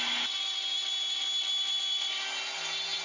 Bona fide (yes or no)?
yes